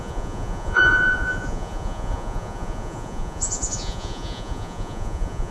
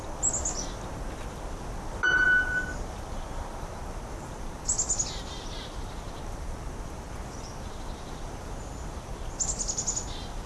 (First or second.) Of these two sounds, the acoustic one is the second